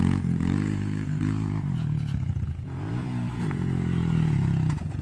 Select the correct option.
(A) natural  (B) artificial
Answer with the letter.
B